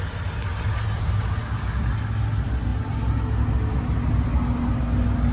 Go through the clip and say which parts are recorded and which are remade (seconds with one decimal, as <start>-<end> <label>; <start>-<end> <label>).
0.0-5.3 recorded